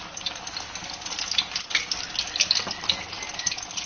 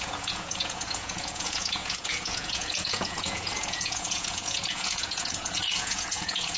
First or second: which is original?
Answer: first